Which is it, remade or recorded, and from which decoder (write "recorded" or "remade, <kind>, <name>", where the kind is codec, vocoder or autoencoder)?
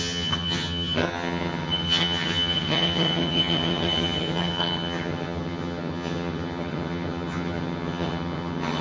remade, vocoder, HiFi-GAN